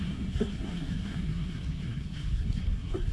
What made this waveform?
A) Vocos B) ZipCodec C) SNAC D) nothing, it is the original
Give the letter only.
C